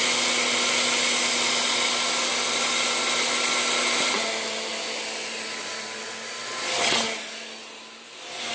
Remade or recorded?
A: recorded